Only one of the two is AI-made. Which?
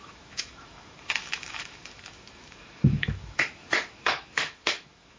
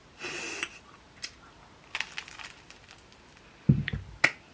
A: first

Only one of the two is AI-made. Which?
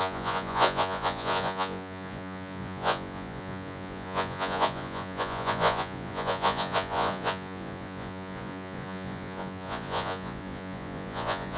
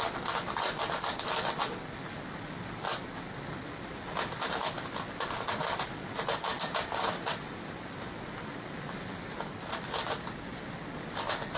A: first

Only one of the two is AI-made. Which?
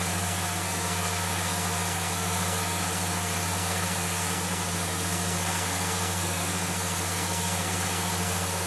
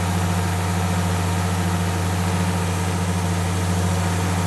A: first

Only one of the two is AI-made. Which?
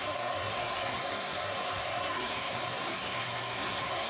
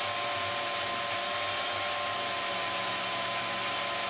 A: first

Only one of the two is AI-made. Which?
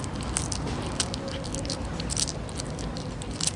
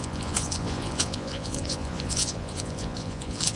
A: second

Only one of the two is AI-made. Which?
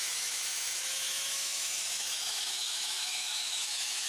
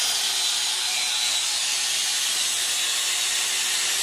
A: first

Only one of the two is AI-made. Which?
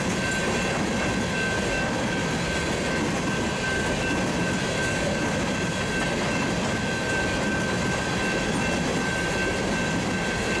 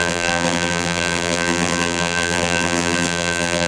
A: second